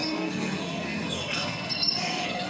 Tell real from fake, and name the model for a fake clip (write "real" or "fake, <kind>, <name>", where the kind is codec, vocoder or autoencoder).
fake, codec, SNAC